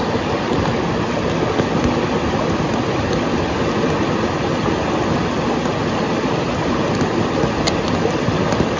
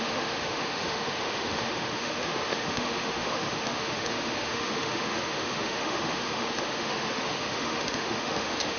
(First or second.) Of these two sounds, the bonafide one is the first